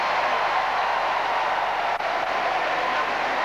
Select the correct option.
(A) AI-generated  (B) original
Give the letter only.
B